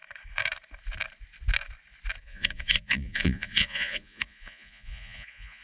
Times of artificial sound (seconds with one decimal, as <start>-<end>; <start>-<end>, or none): 2.2-5.6